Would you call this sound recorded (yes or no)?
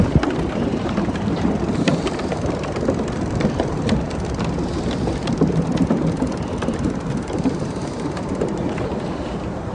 no